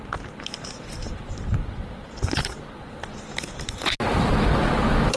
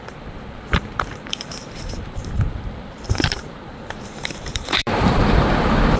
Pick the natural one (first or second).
first